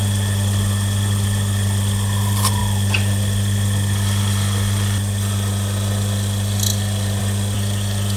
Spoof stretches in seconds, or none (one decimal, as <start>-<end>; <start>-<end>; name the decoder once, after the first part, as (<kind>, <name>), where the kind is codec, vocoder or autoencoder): none